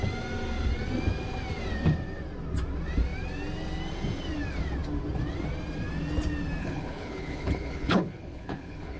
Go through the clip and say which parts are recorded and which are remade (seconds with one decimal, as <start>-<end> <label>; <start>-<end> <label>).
0.0-6.6 recorded; 6.6-9.0 remade